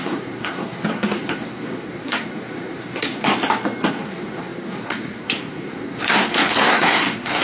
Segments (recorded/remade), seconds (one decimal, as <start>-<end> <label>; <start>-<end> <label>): 0.0-3.3 remade; 3.3-3.9 recorded; 3.9-7.4 remade